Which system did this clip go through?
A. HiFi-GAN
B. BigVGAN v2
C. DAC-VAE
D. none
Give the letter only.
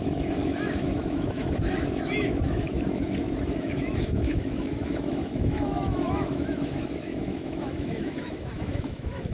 C